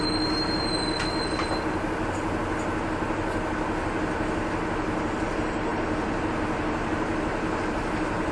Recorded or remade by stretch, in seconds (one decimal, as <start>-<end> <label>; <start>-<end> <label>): 0.0-8.3 recorded